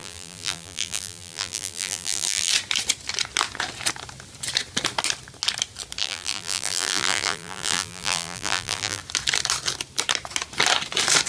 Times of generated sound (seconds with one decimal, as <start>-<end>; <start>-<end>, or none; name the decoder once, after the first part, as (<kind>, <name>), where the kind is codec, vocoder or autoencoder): 0.0-2.5 (vocoder, BigVGAN v2); 6.0-9.0